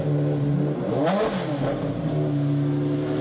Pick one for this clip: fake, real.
real